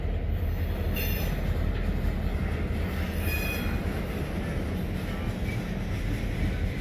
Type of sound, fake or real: real